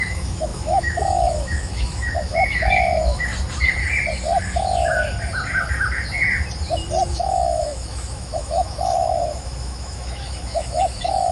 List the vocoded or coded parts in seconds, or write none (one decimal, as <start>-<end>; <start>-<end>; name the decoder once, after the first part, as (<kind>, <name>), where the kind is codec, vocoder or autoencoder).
0.0-3.3 (autoencoder, DAC-VAE); 7.1-11.3